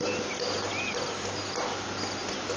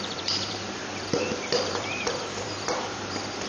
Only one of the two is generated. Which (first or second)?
second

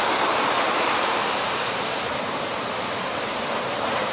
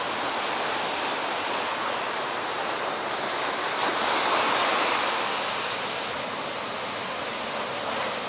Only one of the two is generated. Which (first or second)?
first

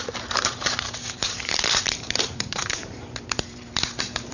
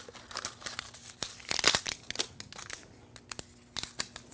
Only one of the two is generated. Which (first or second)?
first